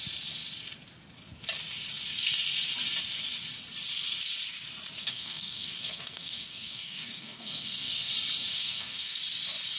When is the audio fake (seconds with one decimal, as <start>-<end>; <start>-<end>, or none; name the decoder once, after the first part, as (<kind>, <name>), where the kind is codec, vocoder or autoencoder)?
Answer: 5.0-8.1 (codec, SNAC); 8.5-9.2